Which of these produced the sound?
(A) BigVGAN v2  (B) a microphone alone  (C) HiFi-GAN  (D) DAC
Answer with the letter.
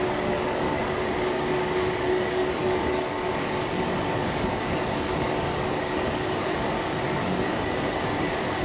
D